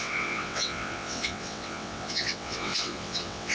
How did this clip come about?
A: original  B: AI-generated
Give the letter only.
B